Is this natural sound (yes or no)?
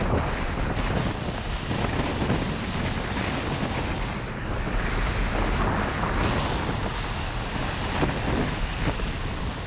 yes